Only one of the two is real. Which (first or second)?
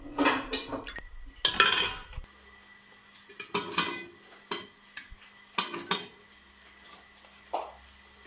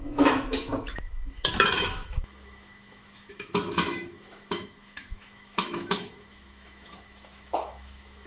first